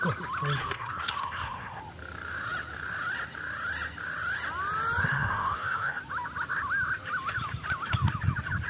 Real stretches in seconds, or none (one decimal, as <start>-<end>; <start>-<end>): 0.0-0.6; 1.8-5.0; 6.0-8.7